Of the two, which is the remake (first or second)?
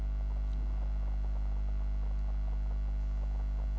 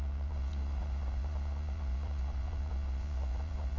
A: second